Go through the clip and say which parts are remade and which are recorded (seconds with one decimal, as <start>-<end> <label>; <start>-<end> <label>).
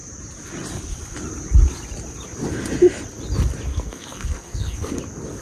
0.0-3.7 recorded; 3.7-5.0 remade; 5.0-5.4 recorded